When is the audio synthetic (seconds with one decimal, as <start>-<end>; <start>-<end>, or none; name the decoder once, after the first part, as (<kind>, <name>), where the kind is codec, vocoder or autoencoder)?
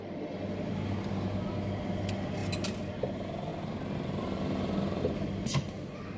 none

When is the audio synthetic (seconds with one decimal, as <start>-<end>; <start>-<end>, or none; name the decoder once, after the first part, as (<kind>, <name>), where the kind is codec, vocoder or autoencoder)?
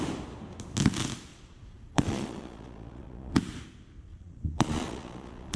1.3-3.3 (vocoder, Vocos); 4.1-5.6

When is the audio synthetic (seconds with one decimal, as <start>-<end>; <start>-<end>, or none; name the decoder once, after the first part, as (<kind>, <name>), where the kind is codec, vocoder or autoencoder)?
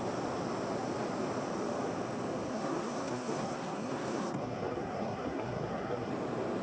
2.5-6.1 (codec, SNAC)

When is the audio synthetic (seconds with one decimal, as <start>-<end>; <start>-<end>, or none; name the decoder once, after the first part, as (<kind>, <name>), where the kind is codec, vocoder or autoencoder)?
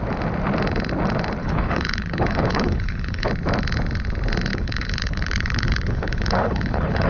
1.4-3.3 (codec, HILCodec); 4.5-7.1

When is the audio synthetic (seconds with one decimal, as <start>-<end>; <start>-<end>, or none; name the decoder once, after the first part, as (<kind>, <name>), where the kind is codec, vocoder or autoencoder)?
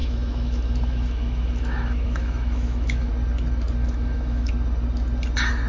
0.0-3.1 (autoencoder, DAC-VAE); 3.8-4.5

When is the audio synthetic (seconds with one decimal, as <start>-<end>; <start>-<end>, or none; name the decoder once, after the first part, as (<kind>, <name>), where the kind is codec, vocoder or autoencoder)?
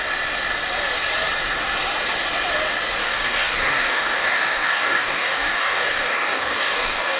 3.0-7.2 (codec, DAC)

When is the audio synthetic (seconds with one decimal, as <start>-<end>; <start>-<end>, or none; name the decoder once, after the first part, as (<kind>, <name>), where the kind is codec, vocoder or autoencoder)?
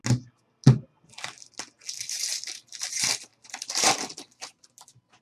none